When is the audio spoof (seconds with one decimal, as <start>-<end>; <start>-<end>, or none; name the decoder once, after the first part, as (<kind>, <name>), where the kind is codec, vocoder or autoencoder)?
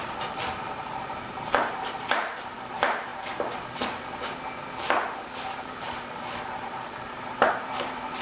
0.0-3.1 (vocoder, BigVGAN v2); 6.4-8.2